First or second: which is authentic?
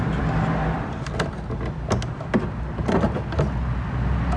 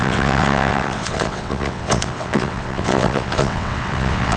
first